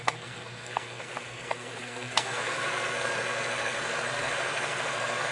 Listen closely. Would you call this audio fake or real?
fake